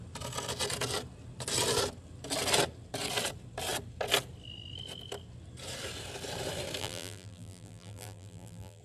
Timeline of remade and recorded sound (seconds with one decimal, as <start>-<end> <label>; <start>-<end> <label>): 0.0-6.8 recorded; 6.8-8.8 remade